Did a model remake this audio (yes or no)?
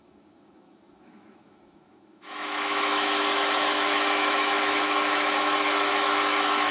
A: yes